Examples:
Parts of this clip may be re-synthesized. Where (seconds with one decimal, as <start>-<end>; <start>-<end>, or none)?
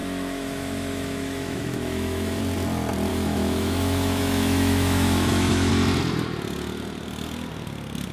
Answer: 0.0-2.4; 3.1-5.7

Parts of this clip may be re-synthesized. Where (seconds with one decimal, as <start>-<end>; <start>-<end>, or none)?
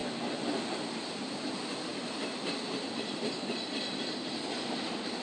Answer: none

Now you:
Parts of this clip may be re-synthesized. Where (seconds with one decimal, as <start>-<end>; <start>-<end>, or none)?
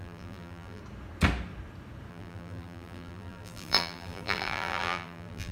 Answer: 0.0-0.8; 2.1-5.5